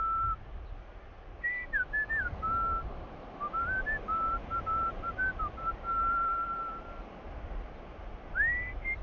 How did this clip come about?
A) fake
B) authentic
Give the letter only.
B